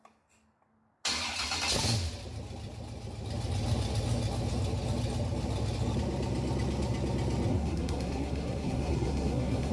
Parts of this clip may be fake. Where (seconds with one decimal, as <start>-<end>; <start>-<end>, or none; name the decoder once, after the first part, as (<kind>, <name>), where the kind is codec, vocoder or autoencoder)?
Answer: 7.5-9.7 (codec, SNAC)